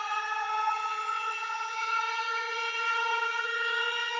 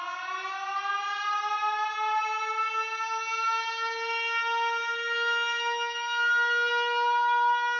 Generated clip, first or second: first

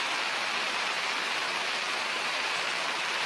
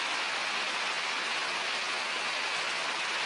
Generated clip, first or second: first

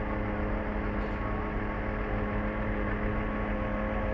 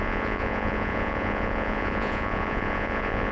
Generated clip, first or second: second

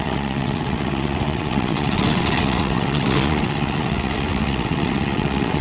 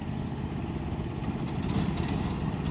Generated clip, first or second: first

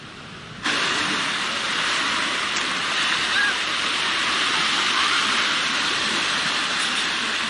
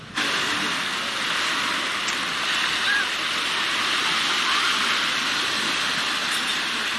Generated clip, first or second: first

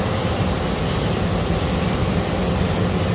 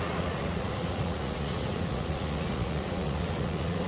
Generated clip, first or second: second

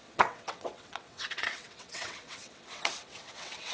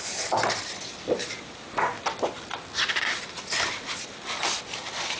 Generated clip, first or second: first